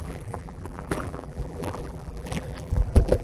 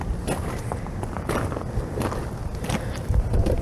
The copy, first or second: first